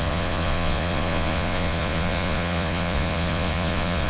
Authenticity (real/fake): fake